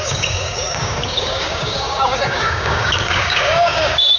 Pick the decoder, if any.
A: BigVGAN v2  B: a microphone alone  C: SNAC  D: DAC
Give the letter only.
D